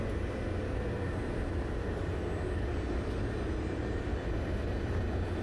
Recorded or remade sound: recorded